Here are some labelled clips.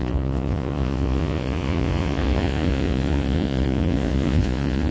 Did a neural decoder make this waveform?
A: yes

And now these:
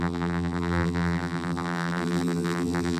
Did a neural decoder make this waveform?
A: yes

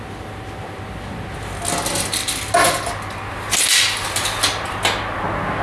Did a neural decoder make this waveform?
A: no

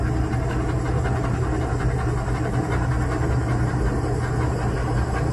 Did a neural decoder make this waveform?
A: no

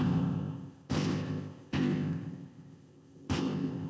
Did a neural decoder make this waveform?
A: yes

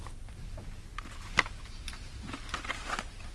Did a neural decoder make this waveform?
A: no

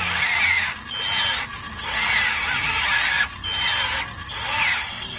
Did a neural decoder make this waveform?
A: no